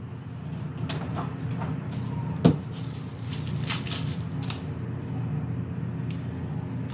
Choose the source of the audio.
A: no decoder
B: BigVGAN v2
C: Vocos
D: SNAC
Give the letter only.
A